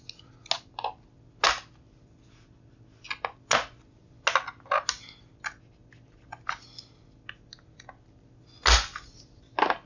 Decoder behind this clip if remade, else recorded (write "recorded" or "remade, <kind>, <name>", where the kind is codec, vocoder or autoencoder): recorded